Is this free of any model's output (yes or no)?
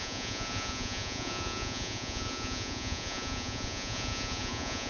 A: no